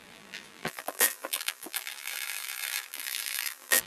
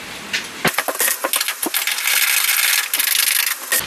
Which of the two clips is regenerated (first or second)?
first